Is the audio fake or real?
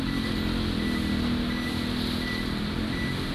real